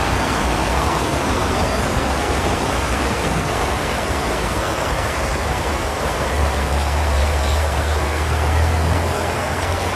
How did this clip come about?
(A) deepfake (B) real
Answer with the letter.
A